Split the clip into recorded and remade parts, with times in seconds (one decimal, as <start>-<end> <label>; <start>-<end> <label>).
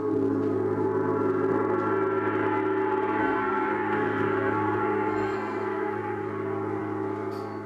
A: 0.0-3.2 recorded; 3.2-6.3 remade; 6.3-7.7 recorded